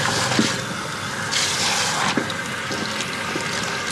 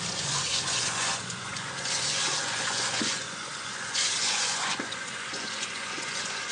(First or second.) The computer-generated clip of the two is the second